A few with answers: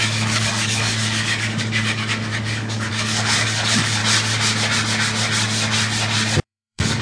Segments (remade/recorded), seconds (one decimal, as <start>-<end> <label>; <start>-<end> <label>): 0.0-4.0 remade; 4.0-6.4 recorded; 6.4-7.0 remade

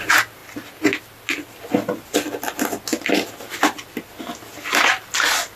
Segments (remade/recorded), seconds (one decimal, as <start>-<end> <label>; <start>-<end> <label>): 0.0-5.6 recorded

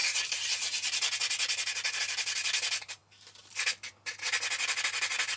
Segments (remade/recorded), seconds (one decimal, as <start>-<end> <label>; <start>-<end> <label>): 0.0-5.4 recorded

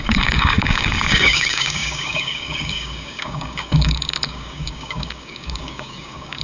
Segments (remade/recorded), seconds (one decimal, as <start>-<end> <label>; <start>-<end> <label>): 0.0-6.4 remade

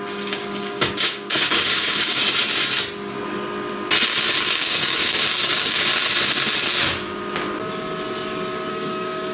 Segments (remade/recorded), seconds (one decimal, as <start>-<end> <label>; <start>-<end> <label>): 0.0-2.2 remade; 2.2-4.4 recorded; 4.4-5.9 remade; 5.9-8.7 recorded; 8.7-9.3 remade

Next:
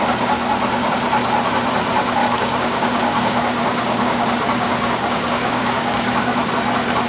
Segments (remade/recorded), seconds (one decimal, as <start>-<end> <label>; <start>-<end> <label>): 0.0-2.2 recorded; 2.2-6.5 remade; 6.5-7.1 recorded

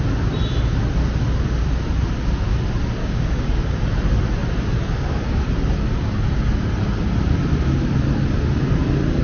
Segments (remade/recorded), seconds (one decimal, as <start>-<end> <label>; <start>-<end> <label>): 0.0-3.0 recorded; 3.0-3.8 remade; 3.8-9.2 recorded

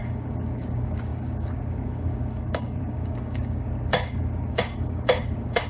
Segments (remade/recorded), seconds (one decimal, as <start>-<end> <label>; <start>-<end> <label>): 0.0-5.7 remade